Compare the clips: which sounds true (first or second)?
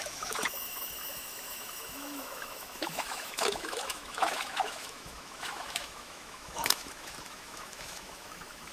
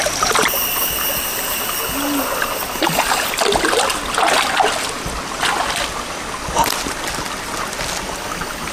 second